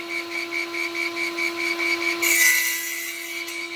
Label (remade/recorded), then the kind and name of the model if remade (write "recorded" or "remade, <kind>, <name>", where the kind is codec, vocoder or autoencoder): recorded